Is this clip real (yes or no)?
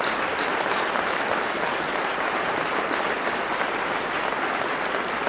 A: yes